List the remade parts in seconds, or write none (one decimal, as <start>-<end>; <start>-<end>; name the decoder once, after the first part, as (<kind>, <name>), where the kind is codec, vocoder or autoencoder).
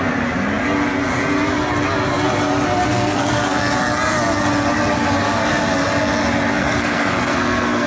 2.8-3.8 (codec, SNAC); 6.5-7.9